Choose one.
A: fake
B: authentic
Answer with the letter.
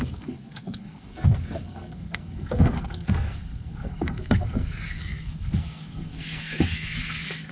A